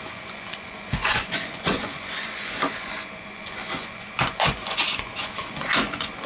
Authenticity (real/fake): fake